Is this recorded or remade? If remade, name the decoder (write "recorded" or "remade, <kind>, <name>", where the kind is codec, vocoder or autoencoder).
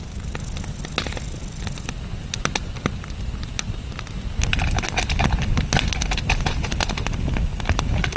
recorded